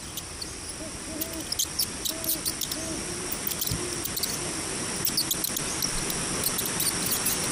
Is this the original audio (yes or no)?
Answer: yes